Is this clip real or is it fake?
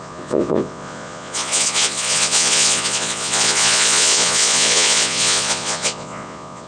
fake